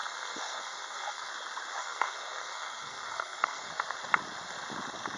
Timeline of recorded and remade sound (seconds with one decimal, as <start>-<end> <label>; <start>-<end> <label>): 0.0-1.3 remade; 1.3-1.8 recorded; 1.8-3.7 remade; 3.7-5.2 recorded